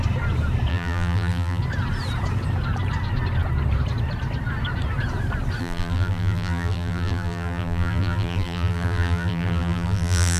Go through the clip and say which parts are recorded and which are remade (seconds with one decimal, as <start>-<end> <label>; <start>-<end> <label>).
0.0-0.7 recorded; 0.7-1.6 remade; 1.6-5.6 recorded; 5.6-10.4 remade